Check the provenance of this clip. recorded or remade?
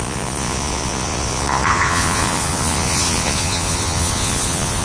remade